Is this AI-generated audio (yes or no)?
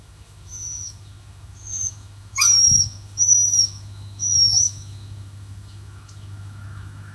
yes